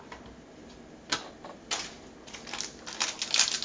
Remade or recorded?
recorded